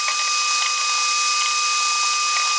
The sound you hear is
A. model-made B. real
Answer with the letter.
B